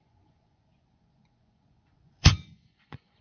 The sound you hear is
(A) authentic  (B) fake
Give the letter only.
B